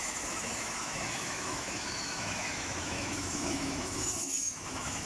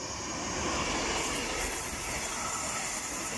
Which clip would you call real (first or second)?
second